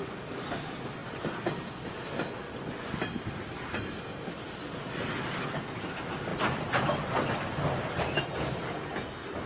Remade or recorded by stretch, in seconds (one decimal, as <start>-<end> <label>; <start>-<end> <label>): 0.0-9.5 recorded